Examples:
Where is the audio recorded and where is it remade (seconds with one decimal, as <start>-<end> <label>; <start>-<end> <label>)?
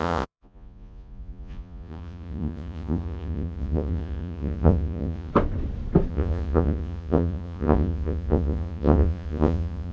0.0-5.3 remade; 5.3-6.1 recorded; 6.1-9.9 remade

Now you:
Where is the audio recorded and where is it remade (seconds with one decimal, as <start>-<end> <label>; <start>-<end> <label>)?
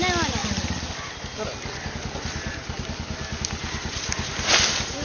0.0-5.0 recorded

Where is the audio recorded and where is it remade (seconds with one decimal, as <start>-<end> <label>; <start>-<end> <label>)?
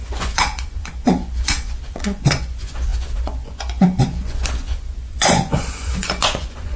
0.0-6.8 remade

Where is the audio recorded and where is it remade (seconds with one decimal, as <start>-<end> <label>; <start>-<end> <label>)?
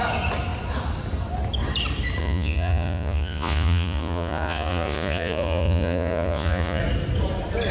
0.0-2.2 recorded; 2.2-6.8 remade; 6.8-7.7 recorded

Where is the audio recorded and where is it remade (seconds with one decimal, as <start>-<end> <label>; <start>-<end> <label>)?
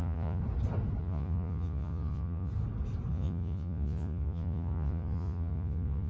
0.0-0.4 remade; 0.4-1.0 recorded; 1.0-2.5 remade; 2.5-3.1 recorded; 3.1-6.1 remade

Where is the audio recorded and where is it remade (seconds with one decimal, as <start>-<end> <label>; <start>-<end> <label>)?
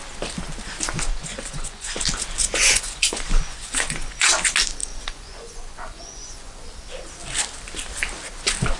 0.0-1.1 recorded; 1.1-2.0 remade; 2.0-2.4 recorded; 2.4-4.3 remade; 4.3-4.8 recorded; 4.8-6.6 remade; 6.6-8.8 recorded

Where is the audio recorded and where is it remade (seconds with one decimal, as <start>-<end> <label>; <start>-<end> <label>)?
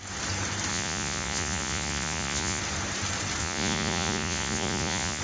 0.0-0.7 recorded; 0.7-2.6 remade; 2.6-3.4 recorded; 3.4-5.2 remade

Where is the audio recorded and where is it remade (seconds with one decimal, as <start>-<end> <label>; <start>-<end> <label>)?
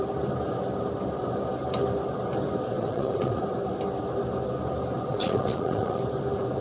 0.0-2.8 recorded; 2.8-3.4 remade; 3.4-5.1 recorded; 5.1-6.0 remade; 6.0-6.6 recorded